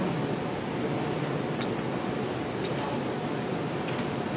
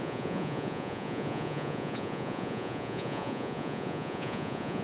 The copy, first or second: second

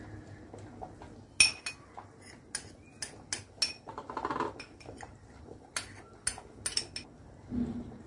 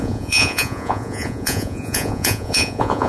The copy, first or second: second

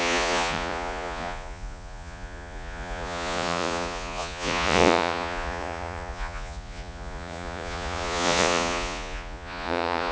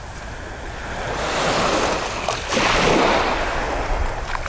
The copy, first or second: first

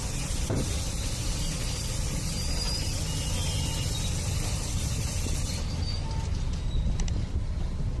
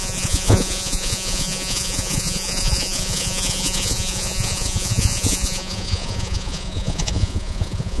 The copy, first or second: second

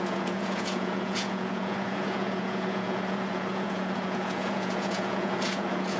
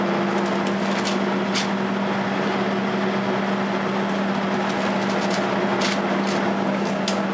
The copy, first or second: first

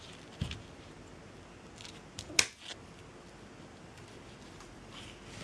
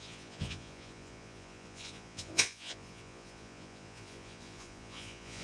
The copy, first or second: second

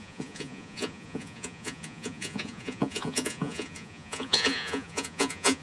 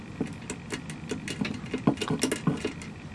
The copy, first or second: first